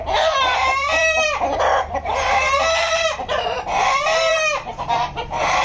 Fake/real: fake